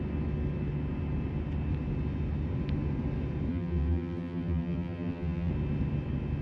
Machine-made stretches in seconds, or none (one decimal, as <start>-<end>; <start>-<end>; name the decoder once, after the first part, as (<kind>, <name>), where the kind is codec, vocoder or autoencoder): 3.5-5.5 (vocoder, BigVGAN v2)